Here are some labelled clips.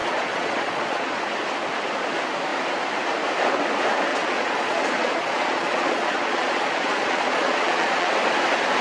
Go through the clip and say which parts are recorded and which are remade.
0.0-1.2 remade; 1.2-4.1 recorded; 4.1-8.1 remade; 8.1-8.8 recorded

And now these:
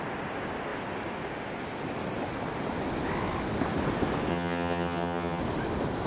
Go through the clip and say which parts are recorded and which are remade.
0.0-4.3 recorded; 4.3-5.4 remade; 5.4-6.1 recorded